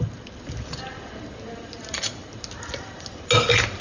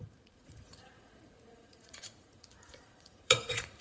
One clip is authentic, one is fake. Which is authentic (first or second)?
first